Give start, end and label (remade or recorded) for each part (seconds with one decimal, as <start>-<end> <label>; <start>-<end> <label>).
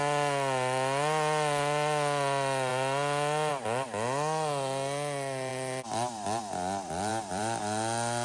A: 0.0-5.5 recorded; 5.5-6.4 remade; 6.4-7.1 recorded; 7.1-7.6 remade; 7.6-8.2 recorded